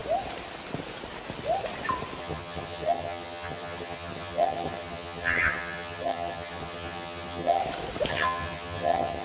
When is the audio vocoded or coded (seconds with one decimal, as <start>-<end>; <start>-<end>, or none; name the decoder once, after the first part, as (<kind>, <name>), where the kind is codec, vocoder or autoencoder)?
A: 2.2-7.6 (vocoder, HiFi-GAN); 8.1-9.2